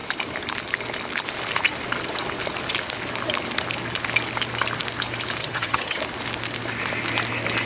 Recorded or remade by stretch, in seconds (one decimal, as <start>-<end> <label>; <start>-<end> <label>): 0.0-5.4 recorded; 5.4-6.0 remade; 6.0-7.7 recorded